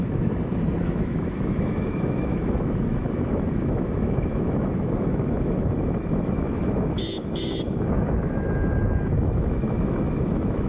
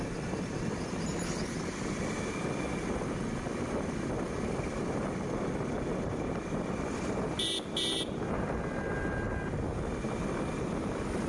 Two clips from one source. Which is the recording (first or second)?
second